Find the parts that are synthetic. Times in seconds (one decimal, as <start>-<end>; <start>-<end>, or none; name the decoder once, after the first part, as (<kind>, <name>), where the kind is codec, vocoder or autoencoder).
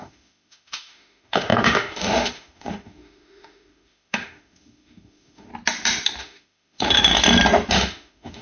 0.0-5.5 (autoencoder, DAC-VAE); 6.2-7.1; 7.7-8.4